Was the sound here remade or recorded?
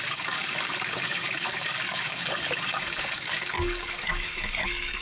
remade